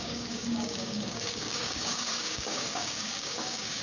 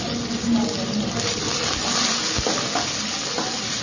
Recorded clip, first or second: second